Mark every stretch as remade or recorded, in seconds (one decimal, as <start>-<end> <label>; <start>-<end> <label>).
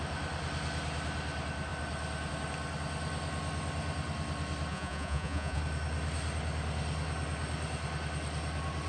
0.0-4.7 recorded; 4.7-5.6 remade; 5.6-8.9 recorded